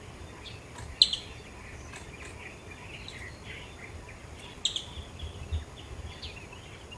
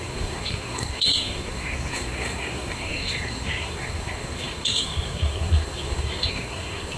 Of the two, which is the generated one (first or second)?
second